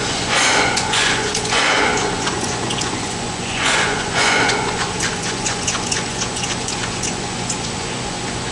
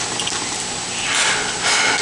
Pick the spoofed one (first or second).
first